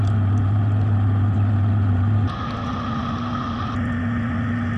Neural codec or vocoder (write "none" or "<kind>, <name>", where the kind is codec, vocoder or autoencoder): none